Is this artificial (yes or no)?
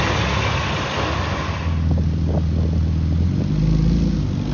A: no